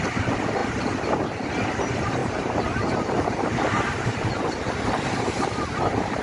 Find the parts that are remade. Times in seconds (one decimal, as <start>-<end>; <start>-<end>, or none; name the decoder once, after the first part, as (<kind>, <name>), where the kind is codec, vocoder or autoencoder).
0.6-1.4 (vocoder, BigVGAN v2); 2.2-6.2